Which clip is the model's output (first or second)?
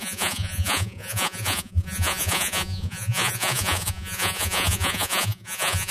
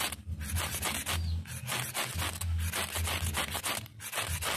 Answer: first